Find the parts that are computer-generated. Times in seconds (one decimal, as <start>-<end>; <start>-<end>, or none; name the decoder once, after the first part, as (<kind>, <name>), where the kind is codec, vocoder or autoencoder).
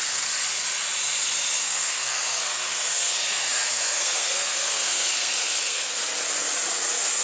1.6-5.9 (codec, SNAC)